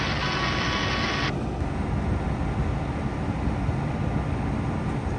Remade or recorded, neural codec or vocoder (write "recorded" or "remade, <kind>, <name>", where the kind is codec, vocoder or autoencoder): recorded